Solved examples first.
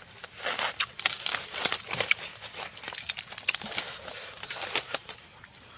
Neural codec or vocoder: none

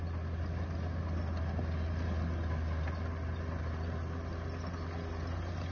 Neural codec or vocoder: none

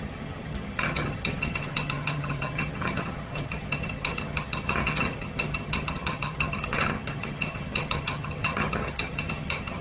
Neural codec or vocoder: vocoder, HiFi-GAN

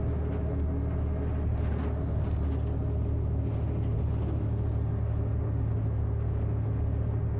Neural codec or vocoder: none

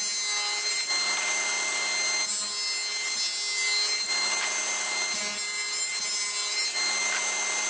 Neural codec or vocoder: none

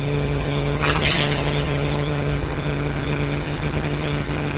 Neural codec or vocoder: vocoder, HiFi-GAN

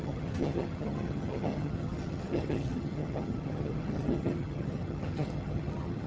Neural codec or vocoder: vocoder, HiFi-GAN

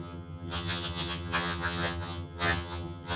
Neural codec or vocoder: vocoder, HiFi-GAN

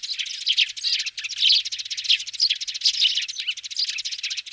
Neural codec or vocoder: none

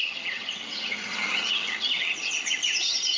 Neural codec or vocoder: vocoder, HiFi-GAN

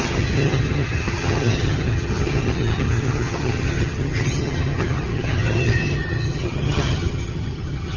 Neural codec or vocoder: vocoder, HiFi-GAN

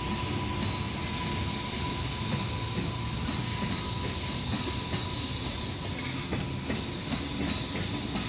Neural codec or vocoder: none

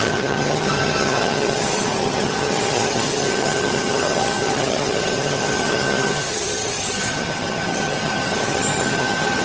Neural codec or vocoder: vocoder, HiFi-GAN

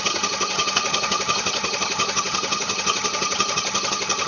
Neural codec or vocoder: vocoder, HiFi-GAN